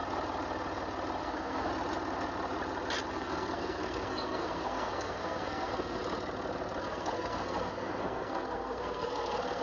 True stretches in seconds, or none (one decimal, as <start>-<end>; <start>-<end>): 0.0-1.2; 1.7-3.1; 6.0-6.8